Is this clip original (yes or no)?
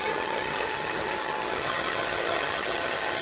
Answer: no